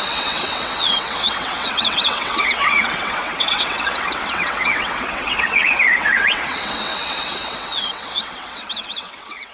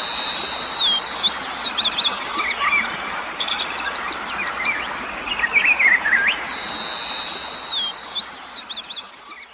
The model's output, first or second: first